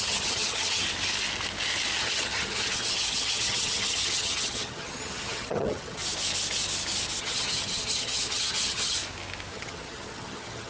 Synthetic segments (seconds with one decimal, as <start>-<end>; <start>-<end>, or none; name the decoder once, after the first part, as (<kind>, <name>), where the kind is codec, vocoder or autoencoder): 0.0-0.8 (vocoder, HiFi-GAN); 2.0-6.0; 7.2-9.0; 9.5-10.7